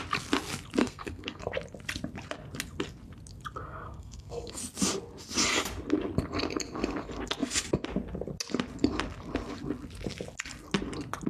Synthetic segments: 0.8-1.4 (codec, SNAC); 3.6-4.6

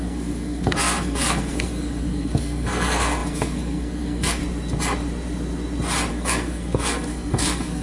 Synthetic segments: 0.0-4.4 (codec, SNAC); 6.1-7.8